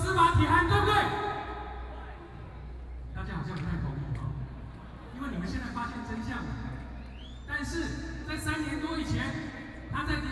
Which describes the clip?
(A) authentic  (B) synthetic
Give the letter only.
A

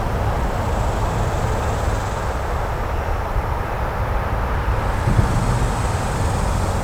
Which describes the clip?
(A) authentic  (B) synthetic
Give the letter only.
A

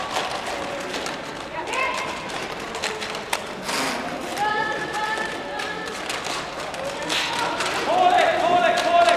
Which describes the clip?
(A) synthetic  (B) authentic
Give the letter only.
B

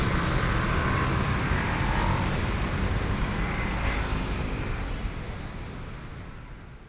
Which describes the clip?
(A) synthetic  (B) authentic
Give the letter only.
B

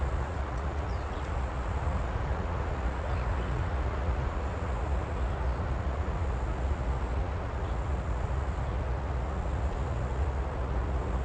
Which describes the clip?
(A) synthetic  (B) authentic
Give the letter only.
A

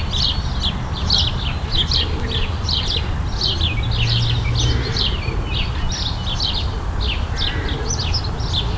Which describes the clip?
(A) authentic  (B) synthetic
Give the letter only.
A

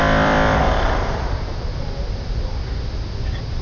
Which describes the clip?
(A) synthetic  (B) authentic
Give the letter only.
A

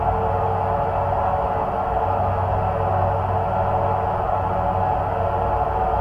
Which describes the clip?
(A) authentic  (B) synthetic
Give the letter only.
A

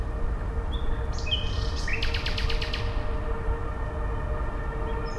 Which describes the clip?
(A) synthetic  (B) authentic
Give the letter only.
B